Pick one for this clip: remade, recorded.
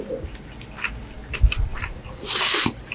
recorded